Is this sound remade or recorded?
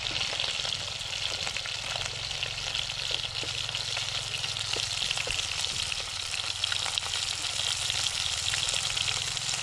recorded